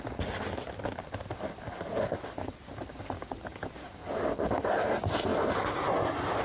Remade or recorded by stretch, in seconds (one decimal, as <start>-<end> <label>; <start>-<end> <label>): 0.0-6.4 recorded